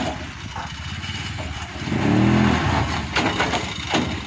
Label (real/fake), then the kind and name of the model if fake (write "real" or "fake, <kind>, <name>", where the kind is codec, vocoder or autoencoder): real